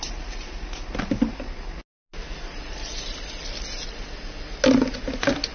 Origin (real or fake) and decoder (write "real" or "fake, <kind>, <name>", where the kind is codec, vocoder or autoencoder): real